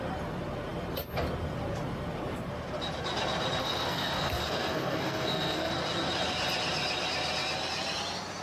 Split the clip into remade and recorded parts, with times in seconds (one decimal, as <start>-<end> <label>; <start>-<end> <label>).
0.0-3.6 recorded; 3.6-5.7 remade; 5.7-8.4 recorded